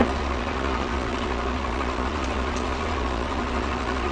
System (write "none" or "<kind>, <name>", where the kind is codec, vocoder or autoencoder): vocoder, Vocos